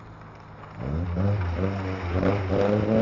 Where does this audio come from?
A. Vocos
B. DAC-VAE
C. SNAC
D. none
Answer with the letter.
D